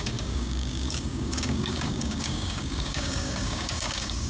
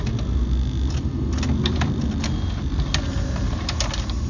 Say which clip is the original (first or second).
second